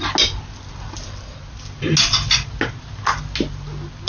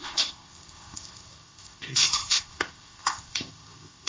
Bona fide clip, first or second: first